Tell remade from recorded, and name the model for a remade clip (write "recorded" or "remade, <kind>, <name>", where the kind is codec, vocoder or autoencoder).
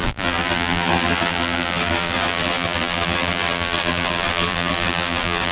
remade, vocoder, BigVGAN v2